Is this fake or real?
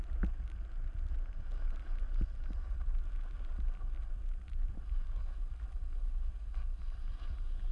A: real